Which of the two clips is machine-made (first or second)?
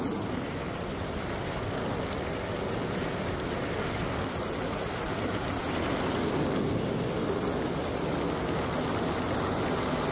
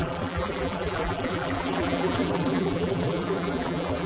second